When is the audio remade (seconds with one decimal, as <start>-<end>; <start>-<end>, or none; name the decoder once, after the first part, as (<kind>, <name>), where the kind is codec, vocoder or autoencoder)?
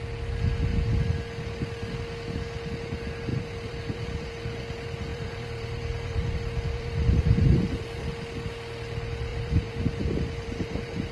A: 3.3-4.3 (vocoder, BigVGAN v2); 5.1-8.1; 9.3-11.1